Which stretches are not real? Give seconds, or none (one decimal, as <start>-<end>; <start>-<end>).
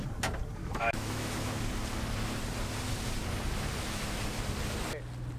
0.6-1.6